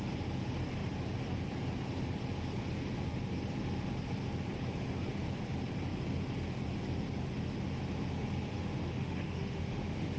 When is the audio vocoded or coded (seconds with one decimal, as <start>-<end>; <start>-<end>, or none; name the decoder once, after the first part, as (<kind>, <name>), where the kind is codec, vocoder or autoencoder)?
8.5-10.2 (autoencoder, DAC-VAE)